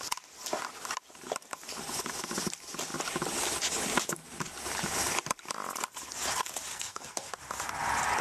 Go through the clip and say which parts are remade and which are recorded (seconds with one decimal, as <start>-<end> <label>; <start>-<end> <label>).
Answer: 0.0-6.7 recorded; 6.7-7.4 remade; 7.4-8.2 recorded

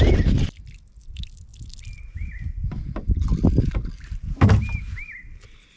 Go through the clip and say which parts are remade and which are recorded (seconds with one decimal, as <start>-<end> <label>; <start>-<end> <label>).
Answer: 0.0-1.5 recorded; 1.5-3.6 remade; 3.6-5.8 recorded